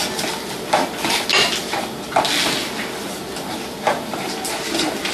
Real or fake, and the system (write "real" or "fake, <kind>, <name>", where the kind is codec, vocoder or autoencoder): real